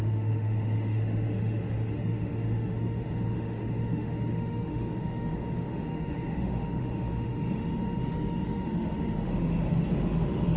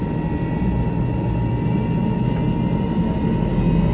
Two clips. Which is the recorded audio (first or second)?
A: second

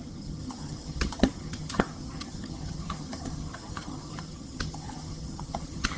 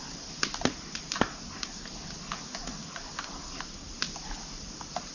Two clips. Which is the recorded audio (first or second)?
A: second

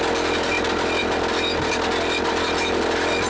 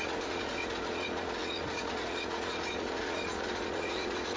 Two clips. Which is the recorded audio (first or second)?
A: first